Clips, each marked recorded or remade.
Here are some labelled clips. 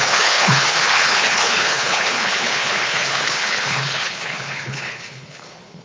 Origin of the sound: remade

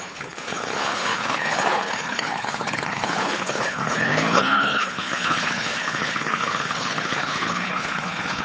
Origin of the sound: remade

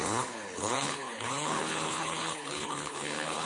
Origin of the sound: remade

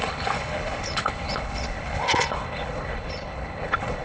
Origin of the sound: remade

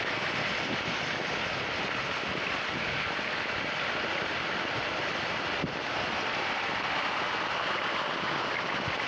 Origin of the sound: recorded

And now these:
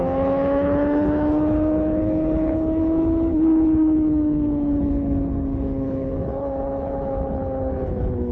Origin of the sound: remade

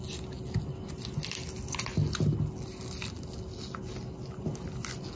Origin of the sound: recorded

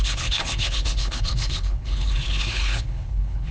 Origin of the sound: remade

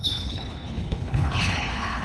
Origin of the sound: remade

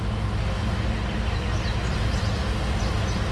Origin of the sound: recorded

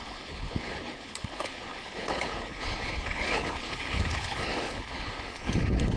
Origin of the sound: remade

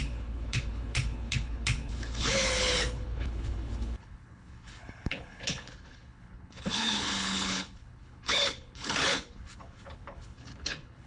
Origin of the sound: remade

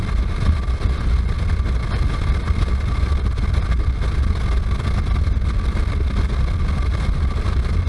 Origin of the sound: recorded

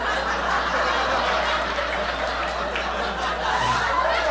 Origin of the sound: recorded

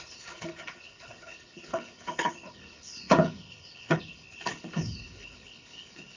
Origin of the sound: remade